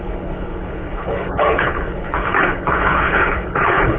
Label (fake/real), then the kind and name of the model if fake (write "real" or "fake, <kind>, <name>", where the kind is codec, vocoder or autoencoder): fake, codec, HILCodec